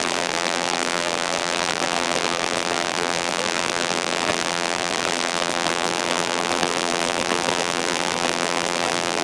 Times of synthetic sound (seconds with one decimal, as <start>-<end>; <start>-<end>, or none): 0.0-9.2